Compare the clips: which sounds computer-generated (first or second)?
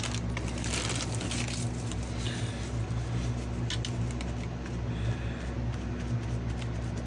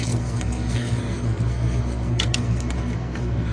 second